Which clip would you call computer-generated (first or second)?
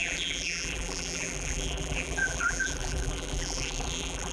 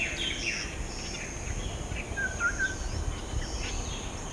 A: first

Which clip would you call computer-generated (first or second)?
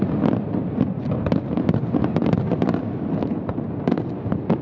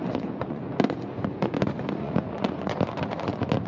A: second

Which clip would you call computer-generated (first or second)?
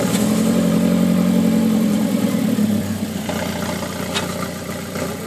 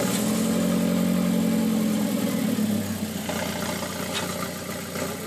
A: first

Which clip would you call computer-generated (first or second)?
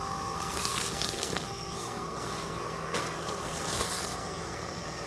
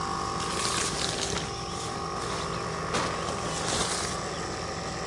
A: first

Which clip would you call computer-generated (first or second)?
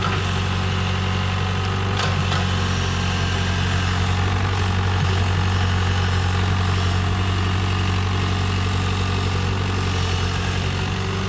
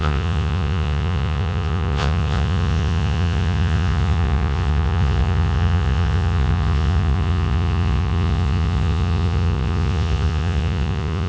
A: second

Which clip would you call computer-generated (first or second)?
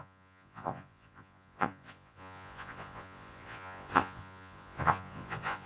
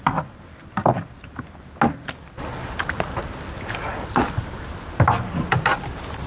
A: first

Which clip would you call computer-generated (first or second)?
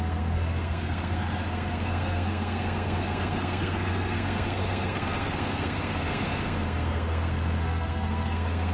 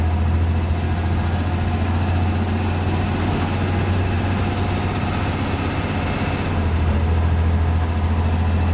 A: first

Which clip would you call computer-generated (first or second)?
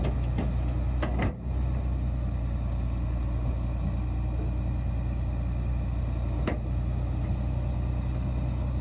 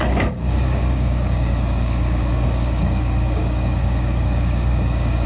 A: second